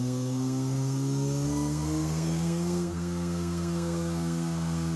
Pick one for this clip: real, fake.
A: fake